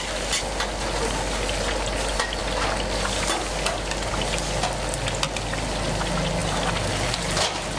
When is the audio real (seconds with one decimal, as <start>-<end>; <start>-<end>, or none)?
0.0-7.8